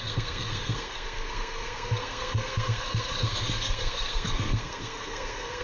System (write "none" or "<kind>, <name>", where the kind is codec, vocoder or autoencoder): codec, SNAC